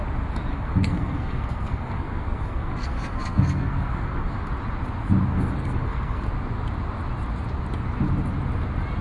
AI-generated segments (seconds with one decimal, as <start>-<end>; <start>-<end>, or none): 0.5-4.4; 5.3-6.3